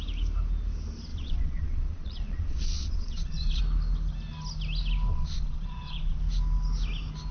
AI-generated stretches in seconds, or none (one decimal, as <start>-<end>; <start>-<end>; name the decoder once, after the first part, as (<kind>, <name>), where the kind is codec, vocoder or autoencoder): 1.1-3.6 (vocoder, Vocos); 5.1-6.2